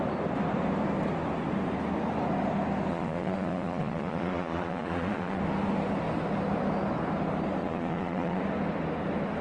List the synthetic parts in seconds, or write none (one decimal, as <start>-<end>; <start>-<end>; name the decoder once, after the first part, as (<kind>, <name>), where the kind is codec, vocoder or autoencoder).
2.9-5.4 (vocoder, Vocos); 7.6-8.4